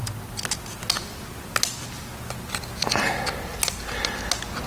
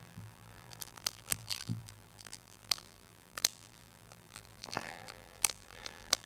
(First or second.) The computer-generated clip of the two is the second